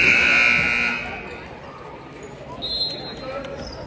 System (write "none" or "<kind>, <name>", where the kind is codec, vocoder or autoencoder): none